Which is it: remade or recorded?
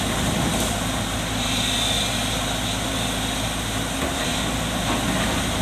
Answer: recorded